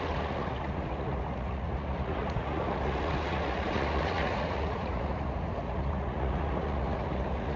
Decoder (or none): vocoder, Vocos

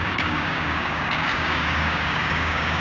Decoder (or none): codec, DAC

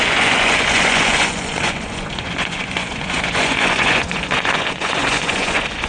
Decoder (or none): vocoder, Vocos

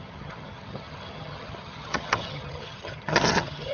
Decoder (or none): vocoder, HiFi-GAN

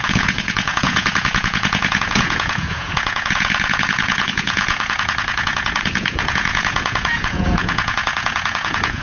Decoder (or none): vocoder, Vocos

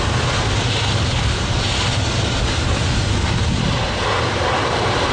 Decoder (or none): none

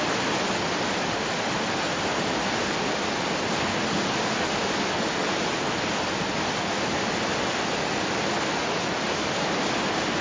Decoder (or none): vocoder, BigVGAN v2